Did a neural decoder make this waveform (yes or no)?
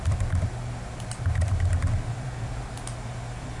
no